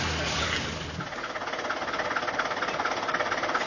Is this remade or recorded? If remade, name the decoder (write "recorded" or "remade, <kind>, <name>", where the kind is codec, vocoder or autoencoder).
recorded